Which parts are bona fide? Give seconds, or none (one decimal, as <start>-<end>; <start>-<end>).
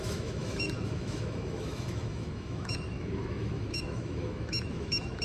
none